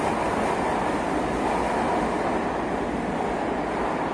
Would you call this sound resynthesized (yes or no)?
no